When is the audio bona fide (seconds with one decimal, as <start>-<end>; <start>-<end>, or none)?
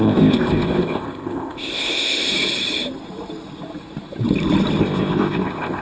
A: 2.3-4.8